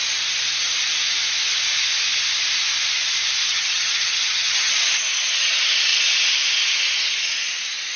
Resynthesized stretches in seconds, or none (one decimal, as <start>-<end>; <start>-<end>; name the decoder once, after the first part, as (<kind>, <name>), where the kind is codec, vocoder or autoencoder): 3.5-4.7 (vocoder, HiFi-GAN)